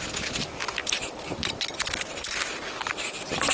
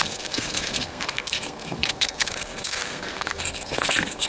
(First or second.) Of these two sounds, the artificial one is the second